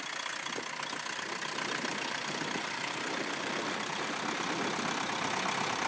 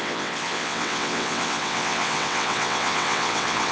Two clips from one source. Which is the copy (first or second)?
second